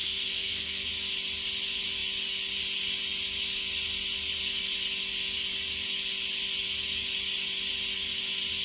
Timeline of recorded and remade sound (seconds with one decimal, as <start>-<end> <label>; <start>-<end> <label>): 0.0-0.9 remade; 0.9-8.6 recorded